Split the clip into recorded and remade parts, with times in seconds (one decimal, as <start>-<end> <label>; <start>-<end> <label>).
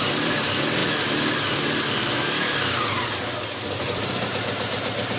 0.0-0.8 remade; 0.8-3.7 recorded; 3.7-5.2 remade